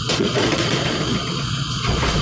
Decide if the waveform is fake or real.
fake